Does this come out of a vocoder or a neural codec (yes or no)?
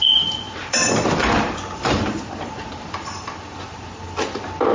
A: yes